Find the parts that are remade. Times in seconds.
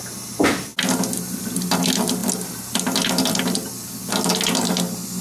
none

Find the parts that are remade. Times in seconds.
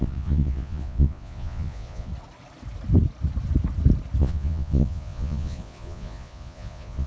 0.0-2.1 (vocoder, Vocos); 4.2-7.1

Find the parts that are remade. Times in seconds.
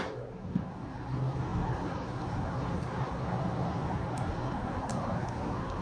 0.0-5.8 (codec, SNAC)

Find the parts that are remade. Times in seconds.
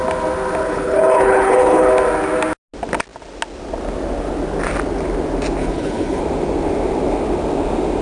0.6-1.9 (codec, HILCodec); 5.6-6.2